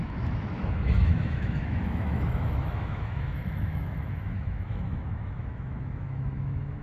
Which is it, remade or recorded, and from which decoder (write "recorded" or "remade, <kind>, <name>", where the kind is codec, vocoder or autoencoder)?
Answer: remade, autoencoder, DAC-VAE